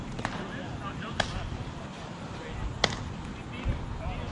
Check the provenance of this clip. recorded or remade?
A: recorded